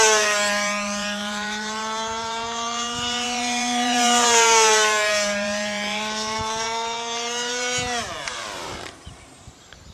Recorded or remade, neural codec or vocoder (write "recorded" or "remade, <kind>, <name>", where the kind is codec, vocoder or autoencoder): remade, vocoder, BigVGAN v2